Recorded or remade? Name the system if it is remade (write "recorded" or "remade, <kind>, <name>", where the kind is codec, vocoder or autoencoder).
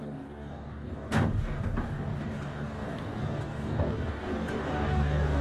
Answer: remade, codec, DAC